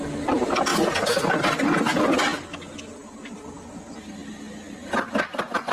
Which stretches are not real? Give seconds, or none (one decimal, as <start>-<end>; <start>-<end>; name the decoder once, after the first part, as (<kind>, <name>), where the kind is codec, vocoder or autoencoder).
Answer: none